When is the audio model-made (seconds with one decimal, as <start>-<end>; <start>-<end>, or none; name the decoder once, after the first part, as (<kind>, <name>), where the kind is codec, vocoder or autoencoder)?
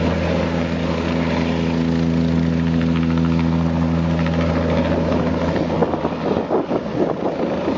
none